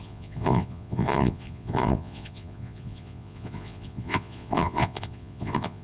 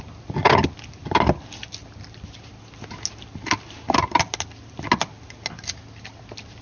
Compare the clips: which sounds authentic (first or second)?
second